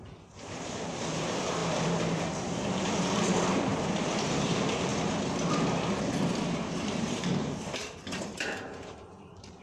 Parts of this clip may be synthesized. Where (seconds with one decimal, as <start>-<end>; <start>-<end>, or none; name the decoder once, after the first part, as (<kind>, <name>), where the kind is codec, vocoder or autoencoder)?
0.0-4.9 (vocoder, BigVGAN v2); 6.7-9.6